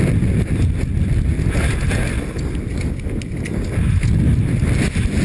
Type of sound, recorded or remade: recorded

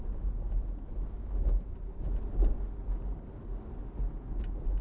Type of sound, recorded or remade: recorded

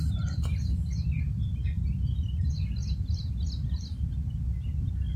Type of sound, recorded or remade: recorded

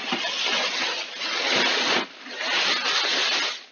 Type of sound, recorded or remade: recorded